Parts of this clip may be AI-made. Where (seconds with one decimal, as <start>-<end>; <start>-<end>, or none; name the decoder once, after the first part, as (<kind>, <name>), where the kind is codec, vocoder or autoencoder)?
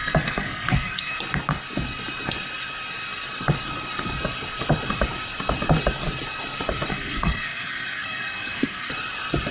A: 0.0-1.2 (codec, SNAC); 6.9-8.9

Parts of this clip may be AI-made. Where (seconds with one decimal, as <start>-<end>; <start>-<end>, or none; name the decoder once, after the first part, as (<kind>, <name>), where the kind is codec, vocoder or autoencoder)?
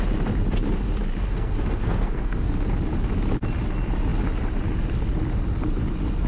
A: 1.2-2.5 (codec, SNAC)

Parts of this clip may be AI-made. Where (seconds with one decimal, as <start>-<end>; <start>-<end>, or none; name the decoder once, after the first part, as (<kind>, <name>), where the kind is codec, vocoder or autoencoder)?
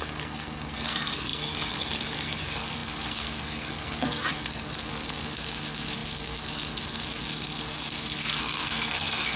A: 0.0-9.4 (codec, SNAC)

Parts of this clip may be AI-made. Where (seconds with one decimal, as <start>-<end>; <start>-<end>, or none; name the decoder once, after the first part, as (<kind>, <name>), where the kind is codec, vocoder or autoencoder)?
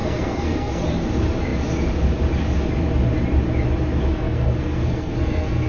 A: 0.0-0.8 (codec, SNAC); 4.1-5.7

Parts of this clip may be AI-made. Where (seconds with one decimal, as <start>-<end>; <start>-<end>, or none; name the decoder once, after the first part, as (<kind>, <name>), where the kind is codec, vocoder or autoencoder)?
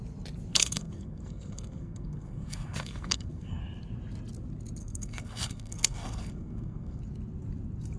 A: 0.5-3.6 (codec, SNAC); 4.8-7.0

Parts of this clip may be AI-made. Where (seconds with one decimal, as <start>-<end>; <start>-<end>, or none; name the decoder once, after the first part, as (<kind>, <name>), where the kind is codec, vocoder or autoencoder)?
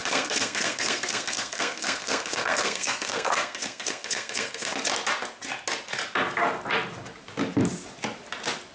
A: 0.0-4.7 (codec, SNAC)